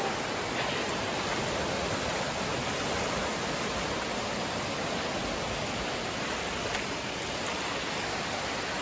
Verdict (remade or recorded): recorded